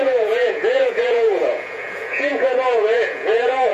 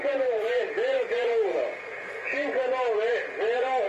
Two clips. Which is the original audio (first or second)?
second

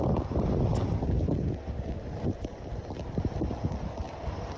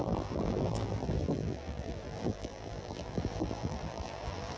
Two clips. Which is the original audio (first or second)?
first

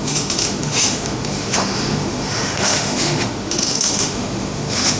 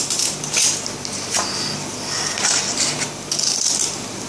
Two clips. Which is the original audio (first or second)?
second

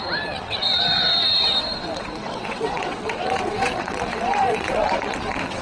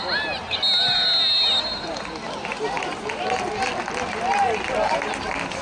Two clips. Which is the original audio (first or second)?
second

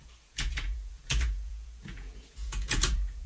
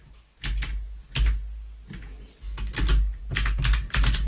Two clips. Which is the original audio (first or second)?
second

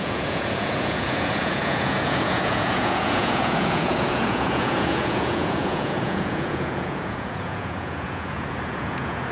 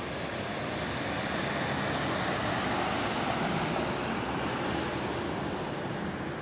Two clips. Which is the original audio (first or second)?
second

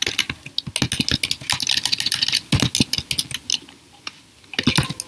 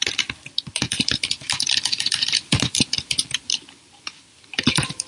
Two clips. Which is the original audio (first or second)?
first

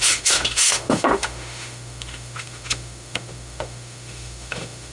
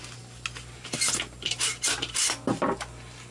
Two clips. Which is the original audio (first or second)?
second